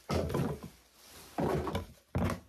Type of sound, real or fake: real